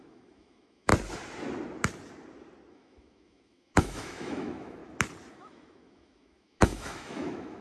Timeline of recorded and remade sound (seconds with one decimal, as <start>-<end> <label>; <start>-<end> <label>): 0.0-0.9 remade; 0.9-2.7 recorded; 2.7-4.8 remade; 4.8-5.3 recorded; 5.3-7.6 remade